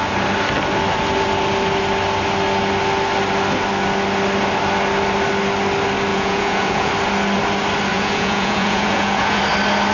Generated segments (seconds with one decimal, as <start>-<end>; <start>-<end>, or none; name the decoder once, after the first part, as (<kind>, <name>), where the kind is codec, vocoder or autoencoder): 6.1-6.9 (vocoder, Vocos); 7.9-9.4